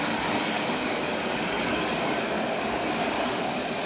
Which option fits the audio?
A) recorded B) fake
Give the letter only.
B